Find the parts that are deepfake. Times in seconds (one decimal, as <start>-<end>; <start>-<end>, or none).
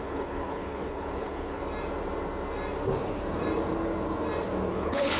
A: 0.0-1.6; 4.7-5.2